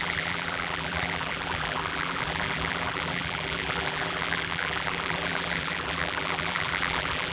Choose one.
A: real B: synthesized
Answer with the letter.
B